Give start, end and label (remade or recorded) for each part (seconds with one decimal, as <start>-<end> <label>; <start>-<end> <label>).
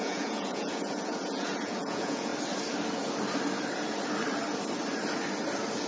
0.0-2.3 remade; 2.3-5.9 recorded